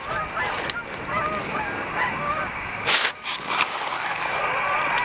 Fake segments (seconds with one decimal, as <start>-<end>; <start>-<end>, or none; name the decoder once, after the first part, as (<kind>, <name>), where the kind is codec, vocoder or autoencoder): 1.4-4.4 (codec, DAC)